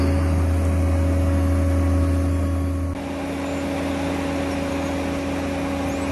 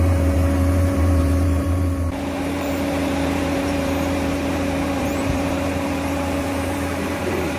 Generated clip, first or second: second